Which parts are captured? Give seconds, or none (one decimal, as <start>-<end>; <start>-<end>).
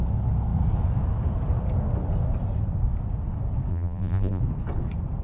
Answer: 0.0-3.7; 4.4-5.2